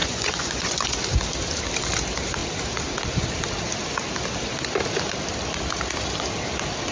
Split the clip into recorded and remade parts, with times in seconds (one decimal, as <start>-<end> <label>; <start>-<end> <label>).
0.0-1.0 remade; 1.0-6.9 recorded